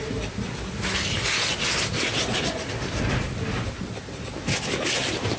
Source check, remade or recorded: recorded